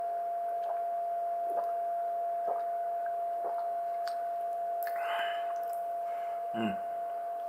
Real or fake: real